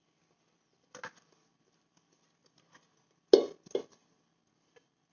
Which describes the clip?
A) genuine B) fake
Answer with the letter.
A